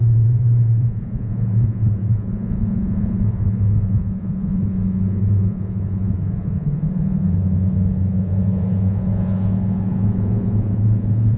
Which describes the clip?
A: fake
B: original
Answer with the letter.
A